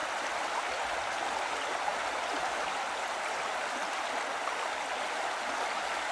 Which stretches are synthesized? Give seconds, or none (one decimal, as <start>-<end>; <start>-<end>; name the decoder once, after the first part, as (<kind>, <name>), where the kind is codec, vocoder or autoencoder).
none